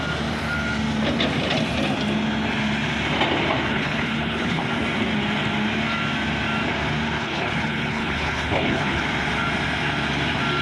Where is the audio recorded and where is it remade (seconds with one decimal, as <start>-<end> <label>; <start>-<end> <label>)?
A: 0.0-3.7 recorded; 3.7-4.6 remade; 4.6-7.2 recorded; 7.2-9.0 remade; 9.0-10.6 recorded